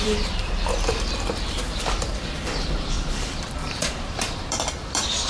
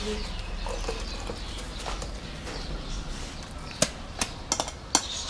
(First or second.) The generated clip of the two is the first